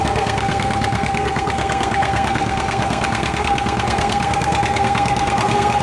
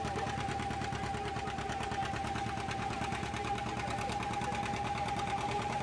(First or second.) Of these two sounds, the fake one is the first